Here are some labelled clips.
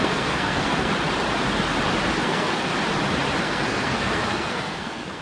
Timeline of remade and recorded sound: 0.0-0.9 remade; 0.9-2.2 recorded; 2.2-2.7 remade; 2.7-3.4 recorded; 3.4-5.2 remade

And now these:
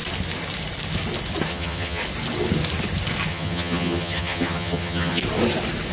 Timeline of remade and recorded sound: 0.0-1.5 recorded; 1.5-2.0 remade; 2.0-3.3 recorded; 3.3-5.2 remade; 5.2-5.9 recorded

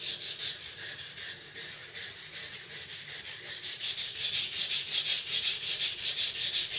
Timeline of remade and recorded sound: 0.0-1.8 recorded; 1.8-4.2 remade; 4.2-6.8 recorded

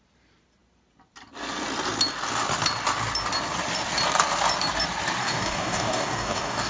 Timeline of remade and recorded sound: 0.0-5.2 recorded; 5.2-6.7 remade

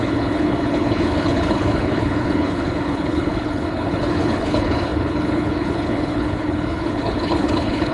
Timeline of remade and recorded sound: 0.0-7.9 remade

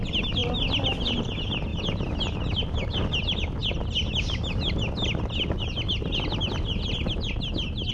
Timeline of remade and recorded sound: 0.0-7.9 recorded

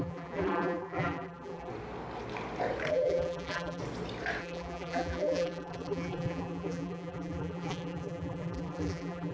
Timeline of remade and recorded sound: 0.0-1.7 remade; 1.7-2.9 recorded; 2.9-3.8 remade; 3.8-4.4 recorded; 4.4-9.3 remade